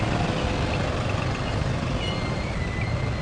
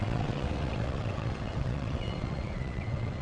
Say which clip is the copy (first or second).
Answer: second